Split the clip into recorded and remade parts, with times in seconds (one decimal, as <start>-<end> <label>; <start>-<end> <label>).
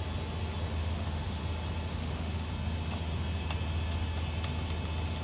0.0-0.7 recorded; 0.7-1.4 remade; 1.4-1.9 recorded; 1.9-2.5 remade; 2.5-5.2 recorded